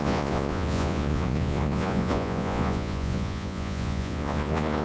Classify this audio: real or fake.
fake